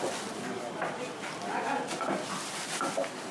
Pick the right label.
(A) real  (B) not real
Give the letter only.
B